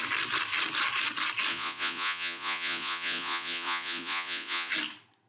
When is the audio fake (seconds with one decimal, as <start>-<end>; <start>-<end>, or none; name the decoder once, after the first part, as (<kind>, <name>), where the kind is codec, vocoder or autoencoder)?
1.5-4.7 (vocoder, Vocos)